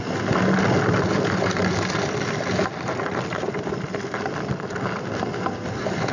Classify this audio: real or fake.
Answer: real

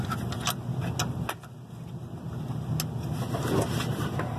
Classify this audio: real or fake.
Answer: real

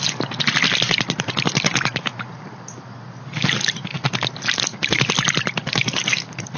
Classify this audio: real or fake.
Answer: real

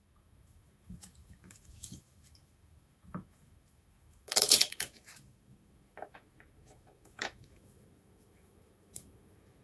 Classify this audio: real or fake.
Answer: fake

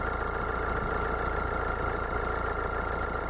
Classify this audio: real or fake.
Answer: real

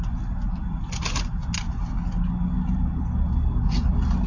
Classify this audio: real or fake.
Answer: real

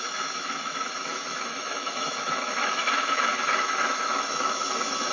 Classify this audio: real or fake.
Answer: fake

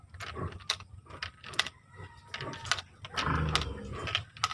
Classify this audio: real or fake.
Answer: real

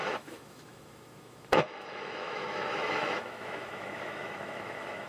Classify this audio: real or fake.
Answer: fake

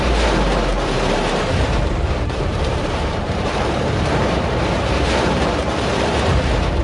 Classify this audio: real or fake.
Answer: fake